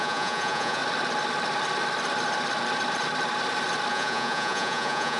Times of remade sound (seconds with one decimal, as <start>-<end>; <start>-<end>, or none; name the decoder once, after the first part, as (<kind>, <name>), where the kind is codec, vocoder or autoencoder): 0.0-0.8 (vocoder, Vocos); 3.9-5.2